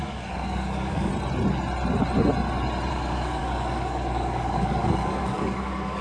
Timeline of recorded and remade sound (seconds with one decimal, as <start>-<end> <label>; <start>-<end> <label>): 0.0-1.1 remade; 1.1-2.9 recorded; 2.9-6.0 remade